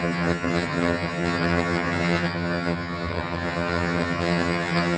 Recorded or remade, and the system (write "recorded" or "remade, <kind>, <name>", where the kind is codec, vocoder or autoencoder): remade, vocoder, HiFi-GAN